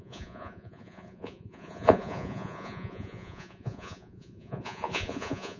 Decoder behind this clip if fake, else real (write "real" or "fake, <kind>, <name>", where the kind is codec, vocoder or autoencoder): fake, vocoder, Vocos